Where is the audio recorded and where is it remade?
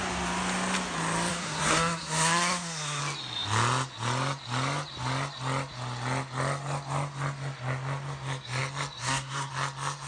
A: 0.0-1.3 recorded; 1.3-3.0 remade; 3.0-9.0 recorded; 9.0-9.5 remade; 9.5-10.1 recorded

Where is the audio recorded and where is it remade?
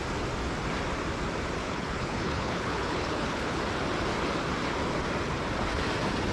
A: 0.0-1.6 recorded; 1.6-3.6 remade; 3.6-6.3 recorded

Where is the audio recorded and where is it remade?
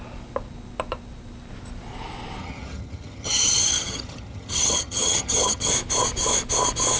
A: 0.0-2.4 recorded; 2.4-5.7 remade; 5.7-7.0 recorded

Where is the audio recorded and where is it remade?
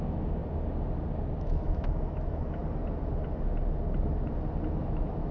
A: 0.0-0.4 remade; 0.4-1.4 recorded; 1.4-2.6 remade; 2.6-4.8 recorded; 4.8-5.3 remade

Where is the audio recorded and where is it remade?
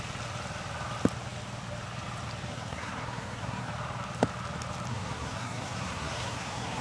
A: 0.0-2.5 recorded; 2.5-3.7 remade; 3.7-4.9 recorded; 4.9-6.8 remade